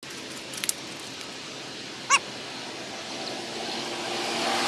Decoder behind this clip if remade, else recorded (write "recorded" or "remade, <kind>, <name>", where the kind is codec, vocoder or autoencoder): recorded